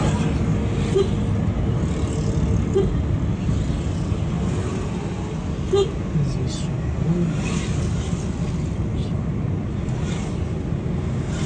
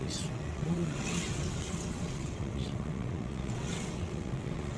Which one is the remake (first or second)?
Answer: second